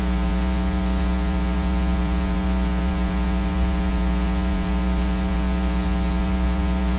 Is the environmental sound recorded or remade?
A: remade